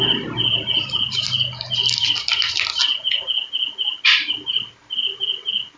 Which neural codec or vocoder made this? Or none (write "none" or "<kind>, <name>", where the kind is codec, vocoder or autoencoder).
none